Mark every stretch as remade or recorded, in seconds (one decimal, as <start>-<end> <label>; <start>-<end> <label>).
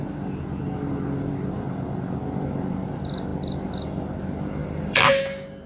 0.0-4.6 recorded; 4.6-5.2 remade; 5.2-5.7 recorded